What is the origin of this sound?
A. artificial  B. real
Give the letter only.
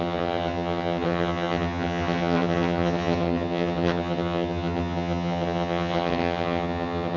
A